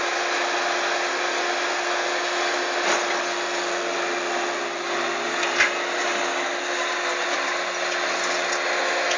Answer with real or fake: real